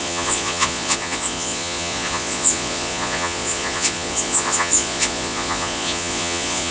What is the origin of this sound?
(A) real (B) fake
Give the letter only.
B